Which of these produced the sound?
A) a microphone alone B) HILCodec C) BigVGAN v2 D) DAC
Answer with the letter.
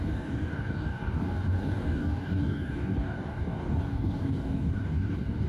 D